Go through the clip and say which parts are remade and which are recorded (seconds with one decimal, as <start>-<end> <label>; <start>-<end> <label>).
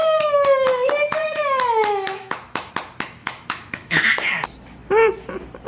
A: 0.0-2.7 remade; 2.7-3.2 recorded; 3.2-4.0 remade; 4.0-5.7 recorded